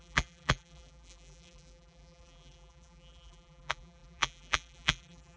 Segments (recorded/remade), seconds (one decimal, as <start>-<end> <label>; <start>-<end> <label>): 0.0-5.4 remade